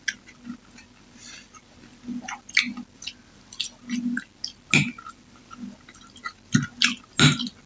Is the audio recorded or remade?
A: recorded